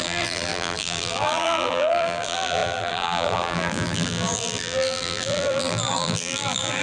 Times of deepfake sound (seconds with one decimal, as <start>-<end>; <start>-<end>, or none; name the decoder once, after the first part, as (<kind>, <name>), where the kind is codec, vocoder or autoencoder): 0.0-6.8 (vocoder, BigVGAN v2)

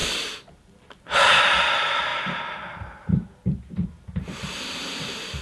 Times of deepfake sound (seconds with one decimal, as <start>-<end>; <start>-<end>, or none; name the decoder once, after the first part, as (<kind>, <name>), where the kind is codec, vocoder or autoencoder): 1.4-5.4 (vocoder, BigVGAN v2)